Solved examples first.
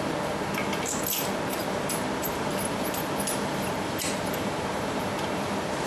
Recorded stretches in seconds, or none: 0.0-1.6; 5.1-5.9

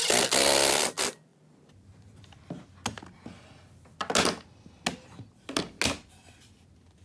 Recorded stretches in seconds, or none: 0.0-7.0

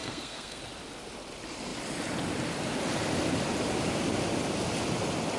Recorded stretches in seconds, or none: 0.6-5.4

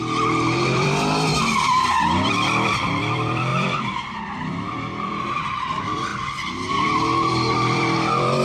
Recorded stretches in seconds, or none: none

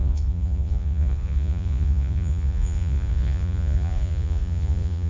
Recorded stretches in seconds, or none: none

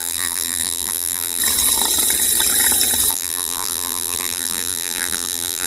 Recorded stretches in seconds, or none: 1.4-3.1

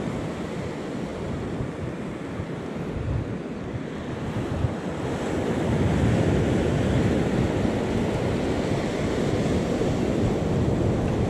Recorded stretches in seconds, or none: 0.0-11.3

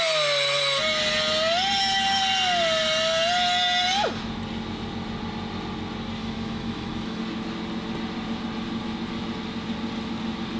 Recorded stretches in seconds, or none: 0.0-6.2; 7.2-10.6